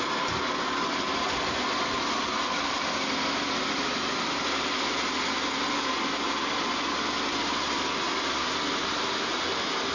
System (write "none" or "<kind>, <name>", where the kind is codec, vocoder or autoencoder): none